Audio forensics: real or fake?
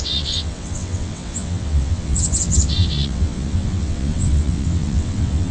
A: fake